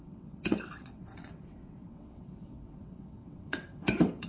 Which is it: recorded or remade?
remade